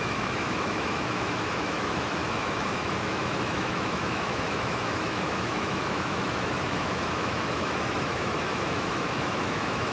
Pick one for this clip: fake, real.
fake